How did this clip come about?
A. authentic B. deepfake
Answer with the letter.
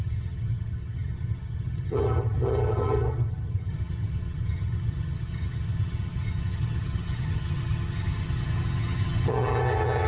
B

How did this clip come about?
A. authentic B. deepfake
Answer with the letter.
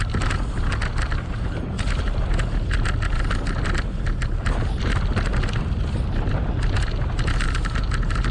A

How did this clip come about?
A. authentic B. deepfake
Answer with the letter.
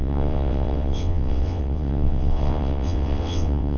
B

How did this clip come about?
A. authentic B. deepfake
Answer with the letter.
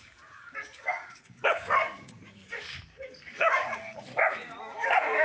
B